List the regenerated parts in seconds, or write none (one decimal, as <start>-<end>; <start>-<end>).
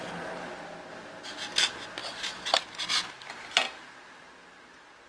none